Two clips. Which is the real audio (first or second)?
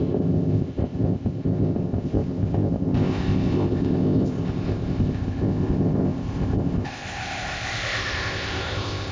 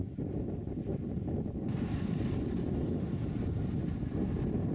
second